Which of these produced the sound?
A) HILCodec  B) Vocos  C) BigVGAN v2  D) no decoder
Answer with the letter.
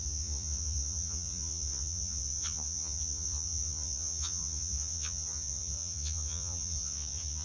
B